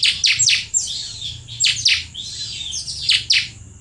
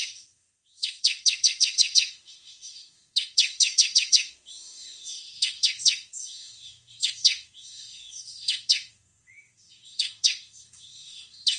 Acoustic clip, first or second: first